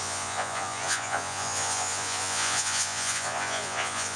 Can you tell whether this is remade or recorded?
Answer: remade